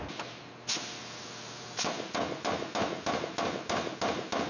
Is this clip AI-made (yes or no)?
no